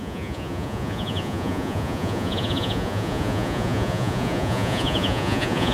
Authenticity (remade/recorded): remade